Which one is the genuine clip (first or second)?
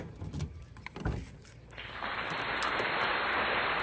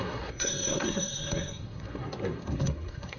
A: first